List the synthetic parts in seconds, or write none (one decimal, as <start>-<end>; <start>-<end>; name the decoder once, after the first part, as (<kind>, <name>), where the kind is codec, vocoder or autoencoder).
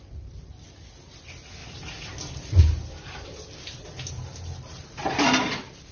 none